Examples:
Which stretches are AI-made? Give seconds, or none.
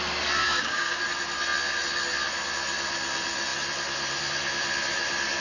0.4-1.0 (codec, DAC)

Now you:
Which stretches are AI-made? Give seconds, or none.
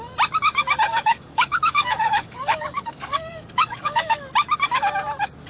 0.9-4.2 (codec, DAC)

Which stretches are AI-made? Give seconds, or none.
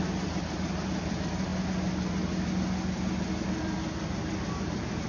none